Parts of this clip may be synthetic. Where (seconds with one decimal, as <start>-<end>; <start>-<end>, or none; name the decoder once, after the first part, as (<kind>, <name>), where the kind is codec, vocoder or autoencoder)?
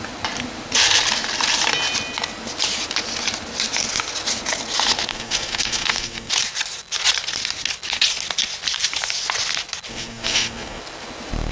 5.1-6.3 (codec, SNAC); 9.9-10.8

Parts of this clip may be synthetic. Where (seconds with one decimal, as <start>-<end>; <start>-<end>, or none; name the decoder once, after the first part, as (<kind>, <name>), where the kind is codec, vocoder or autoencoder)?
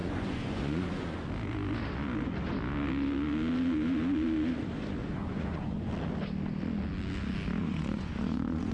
0.0-1.3 (vocoder, Vocos); 5.0-5.9; 7.6-8.7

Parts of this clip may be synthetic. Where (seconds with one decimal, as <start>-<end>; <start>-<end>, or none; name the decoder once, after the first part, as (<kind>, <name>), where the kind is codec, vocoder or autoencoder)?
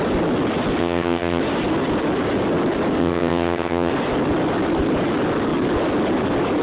0.8-1.4 (vocoder, HiFi-GAN); 3.0-3.9